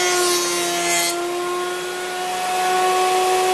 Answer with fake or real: real